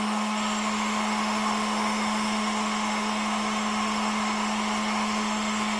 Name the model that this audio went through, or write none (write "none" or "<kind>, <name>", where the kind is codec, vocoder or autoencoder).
autoencoder, DAC-VAE